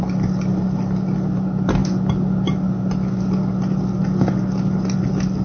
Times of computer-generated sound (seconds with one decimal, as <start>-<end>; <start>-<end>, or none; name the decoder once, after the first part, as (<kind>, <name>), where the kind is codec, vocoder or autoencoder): none